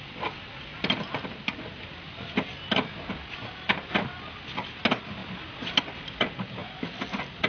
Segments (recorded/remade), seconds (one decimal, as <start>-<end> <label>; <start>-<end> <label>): 0.0-7.5 recorded